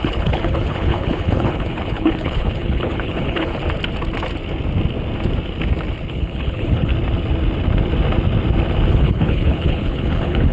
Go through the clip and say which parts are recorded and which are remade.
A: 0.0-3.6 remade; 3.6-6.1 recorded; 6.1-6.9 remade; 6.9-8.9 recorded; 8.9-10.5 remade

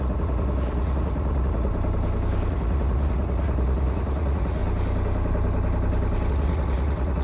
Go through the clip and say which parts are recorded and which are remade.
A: 0.0-1.7 remade; 1.7-2.5 recorded; 2.5-4.6 remade; 4.6-6.3 recorded; 6.3-7.2 remade

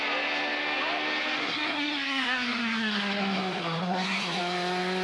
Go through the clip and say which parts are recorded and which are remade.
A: 0.0-1.4 recorded; 1.4-4.4 remade; 4.4-5.0 recorded